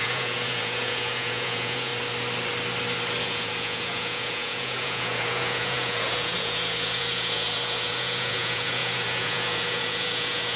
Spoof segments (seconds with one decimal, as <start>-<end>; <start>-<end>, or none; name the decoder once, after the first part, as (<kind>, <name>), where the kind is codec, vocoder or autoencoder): 0.0-1.9 (vocoder, Vocos); 3.2-10.6